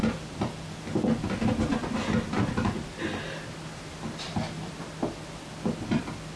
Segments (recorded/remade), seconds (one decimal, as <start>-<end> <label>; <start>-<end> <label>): 0.0-6.4 recorded